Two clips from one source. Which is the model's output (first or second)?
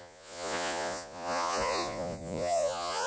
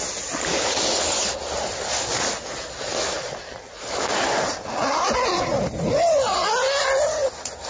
first